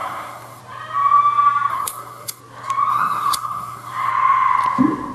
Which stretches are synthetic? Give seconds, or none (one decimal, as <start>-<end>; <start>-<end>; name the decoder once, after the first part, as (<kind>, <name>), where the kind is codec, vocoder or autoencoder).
0.0-0.6 (codec, SNAC); 1.7-2.4; 2.9-4.1